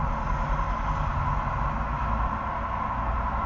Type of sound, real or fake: real